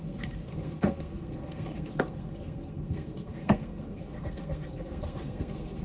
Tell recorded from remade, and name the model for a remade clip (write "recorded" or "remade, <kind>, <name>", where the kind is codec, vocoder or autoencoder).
remade, codec, SNAC